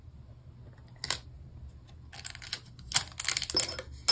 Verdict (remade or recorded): recorded